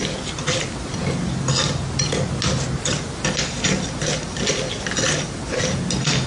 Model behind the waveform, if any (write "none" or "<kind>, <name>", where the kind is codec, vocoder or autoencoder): none